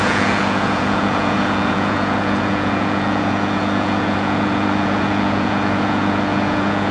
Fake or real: fake